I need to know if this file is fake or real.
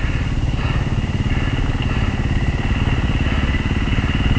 real